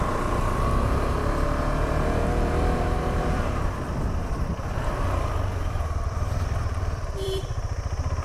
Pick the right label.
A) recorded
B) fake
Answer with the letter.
B